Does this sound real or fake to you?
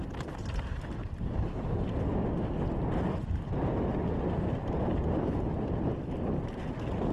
real